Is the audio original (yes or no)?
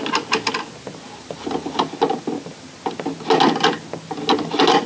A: yes